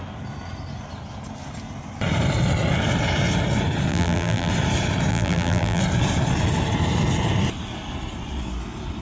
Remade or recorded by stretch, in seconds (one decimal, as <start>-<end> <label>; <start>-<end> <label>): 0.0-3.9 recorded; 3.9-4.5 remade; 4.5-5.1 recorded; 5.1-5.8 remade; 5.8-9.0 recorded